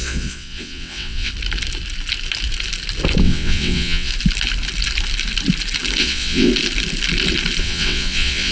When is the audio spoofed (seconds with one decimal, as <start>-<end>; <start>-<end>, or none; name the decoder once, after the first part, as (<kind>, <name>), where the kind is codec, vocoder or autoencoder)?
0.0-1.3 (vocoder, WaveNeXt); 3.2-4.1; 6.0-6.5; 7.6-8.5